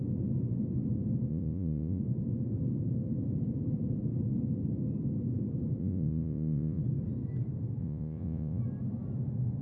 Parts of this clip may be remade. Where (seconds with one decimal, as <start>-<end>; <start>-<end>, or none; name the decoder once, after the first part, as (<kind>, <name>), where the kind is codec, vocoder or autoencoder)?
1.3-2.0 (vocoder, Vocos); 5.8-6.8; 7.8-8.6